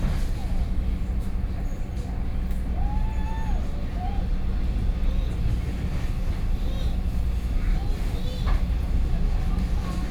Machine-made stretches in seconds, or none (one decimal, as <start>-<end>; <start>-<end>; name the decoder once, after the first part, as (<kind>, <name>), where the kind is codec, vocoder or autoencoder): none